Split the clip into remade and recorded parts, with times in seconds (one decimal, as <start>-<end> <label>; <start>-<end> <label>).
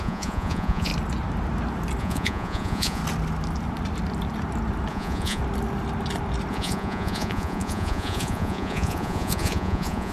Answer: 0.0-0.9 remade; 0.9-2.0 recorded; 2.0-3.0 remade; 3.0-4.9 recorded; 4.9-5.4 remade; 5.4-6.5 recorded; 6.5-10.1 remade